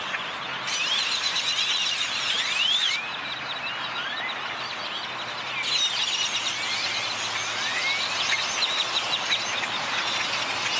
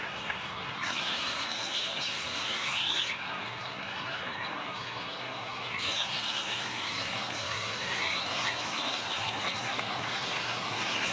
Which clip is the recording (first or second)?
first